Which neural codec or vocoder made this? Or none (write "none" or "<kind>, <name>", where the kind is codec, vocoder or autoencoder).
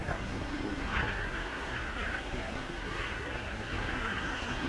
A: codec, SNAC